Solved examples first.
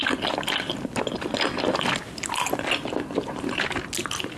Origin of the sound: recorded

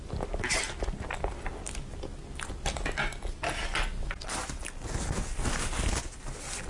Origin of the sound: recorded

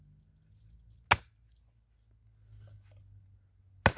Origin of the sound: recorded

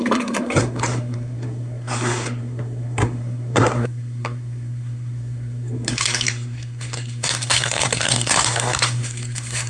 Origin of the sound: remade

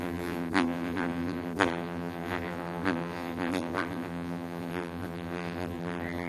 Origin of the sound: remade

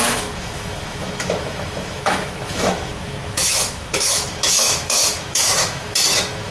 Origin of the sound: remade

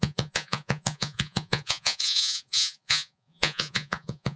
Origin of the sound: remade